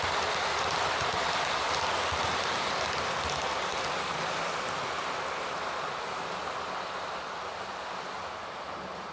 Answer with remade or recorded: recorded